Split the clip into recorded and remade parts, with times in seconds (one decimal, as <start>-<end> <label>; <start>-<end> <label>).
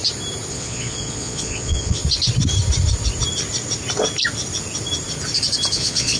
0.0-0.5 recorded; 0.5-2.0 remade; 2.0-5.7 recorded; 5.7-6.2 remade